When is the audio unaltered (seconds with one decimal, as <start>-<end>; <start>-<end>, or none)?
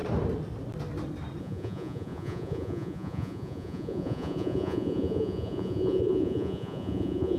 0.0-1.4